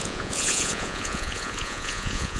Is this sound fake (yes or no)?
yes